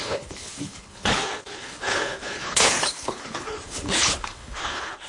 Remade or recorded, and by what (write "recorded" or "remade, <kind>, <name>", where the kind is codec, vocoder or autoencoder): remade, codec, HILCodec